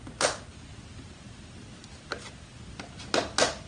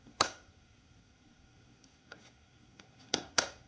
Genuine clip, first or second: first